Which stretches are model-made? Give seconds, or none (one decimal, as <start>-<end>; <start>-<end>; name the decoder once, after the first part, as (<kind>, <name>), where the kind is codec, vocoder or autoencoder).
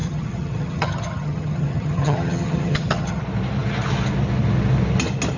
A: 0.0-3.2 (vocoder, HiFi-GAN)